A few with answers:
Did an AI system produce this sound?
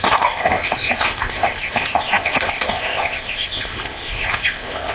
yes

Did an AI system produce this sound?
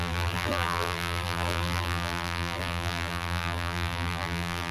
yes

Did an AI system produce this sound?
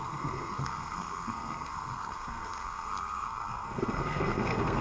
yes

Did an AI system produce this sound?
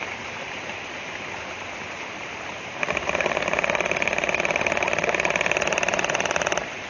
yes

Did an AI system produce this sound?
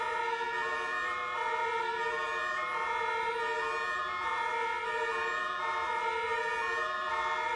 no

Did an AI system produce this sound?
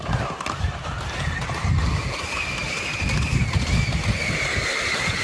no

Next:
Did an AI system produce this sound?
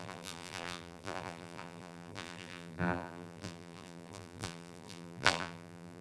yes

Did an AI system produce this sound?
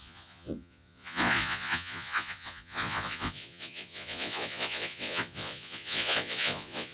yes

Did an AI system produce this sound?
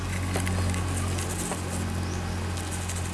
no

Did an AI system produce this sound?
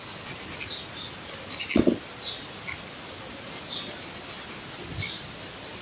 no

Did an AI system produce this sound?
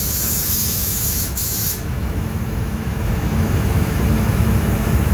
yes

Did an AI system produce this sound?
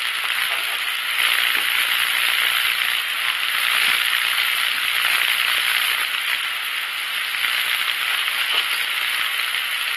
no